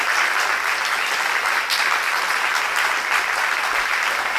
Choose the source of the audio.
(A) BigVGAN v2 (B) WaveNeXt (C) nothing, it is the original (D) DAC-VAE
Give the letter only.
C